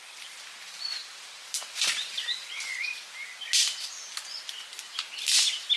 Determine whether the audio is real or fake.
real